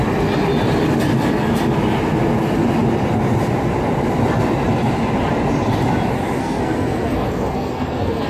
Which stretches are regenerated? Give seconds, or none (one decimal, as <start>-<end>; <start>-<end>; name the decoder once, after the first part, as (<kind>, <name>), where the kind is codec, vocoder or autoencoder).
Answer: 6.4-8.3 (codec, SNAC)